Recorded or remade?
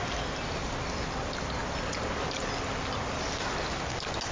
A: recorded